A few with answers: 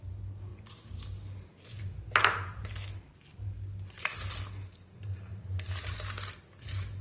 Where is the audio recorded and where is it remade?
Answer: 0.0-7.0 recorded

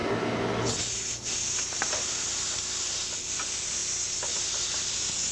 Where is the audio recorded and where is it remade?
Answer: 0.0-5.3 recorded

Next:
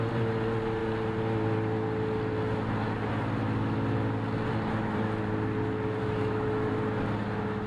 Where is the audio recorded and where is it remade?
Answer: 0.0-6.0 recorded; 6.0-6.7 remade; 6.7-7.7 recorded